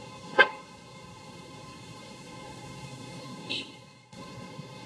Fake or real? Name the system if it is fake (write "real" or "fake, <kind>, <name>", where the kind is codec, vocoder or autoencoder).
fake, codec, SNAC